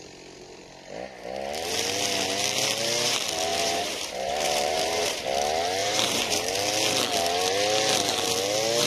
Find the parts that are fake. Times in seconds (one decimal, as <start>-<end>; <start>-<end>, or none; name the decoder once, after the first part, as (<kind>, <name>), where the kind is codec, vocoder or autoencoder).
3.5-5.2 (vocoder, BigVGAN v2); 5.8-6.5